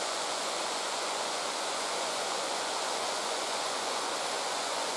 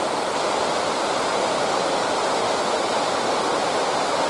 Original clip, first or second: second